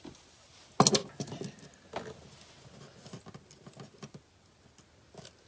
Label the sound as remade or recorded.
recorded